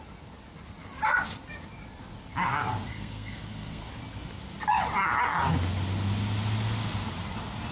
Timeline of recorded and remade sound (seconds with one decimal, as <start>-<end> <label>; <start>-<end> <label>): 0.0-2.9 recorded; 2.9-3.8 remade; 3.8-7.7 recorded